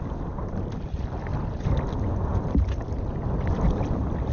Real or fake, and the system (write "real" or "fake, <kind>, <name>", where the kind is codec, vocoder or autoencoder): real